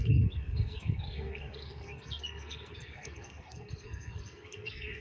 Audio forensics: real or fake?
fake